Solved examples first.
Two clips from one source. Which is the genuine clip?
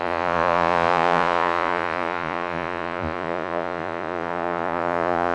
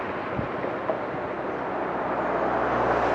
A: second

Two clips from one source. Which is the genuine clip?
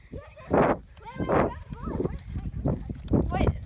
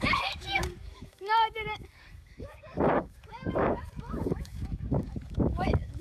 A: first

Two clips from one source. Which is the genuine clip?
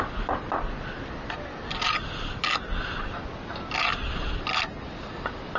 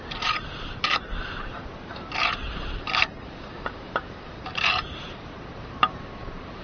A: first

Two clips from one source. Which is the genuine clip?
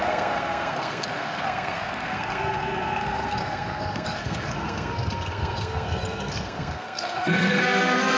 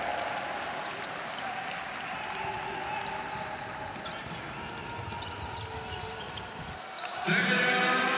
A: second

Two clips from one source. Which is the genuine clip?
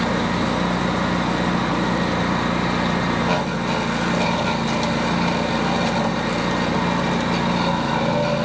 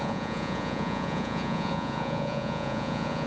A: first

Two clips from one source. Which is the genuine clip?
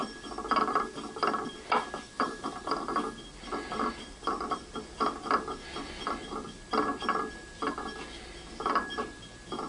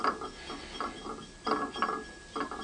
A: second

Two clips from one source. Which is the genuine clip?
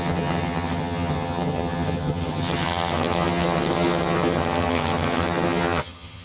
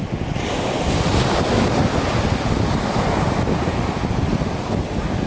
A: second